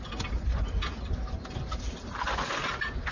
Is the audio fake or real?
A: real